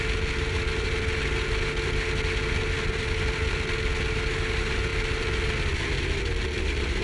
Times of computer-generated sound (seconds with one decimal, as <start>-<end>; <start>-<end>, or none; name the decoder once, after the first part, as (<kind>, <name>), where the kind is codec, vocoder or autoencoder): none